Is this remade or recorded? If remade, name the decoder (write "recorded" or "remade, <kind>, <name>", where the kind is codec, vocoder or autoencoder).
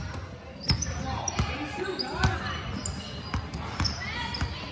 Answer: recorded